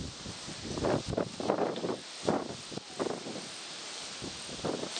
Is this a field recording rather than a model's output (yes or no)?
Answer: yes